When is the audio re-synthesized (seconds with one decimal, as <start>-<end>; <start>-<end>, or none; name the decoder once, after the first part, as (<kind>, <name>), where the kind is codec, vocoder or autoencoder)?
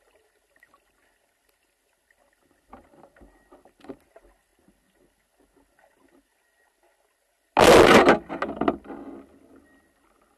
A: none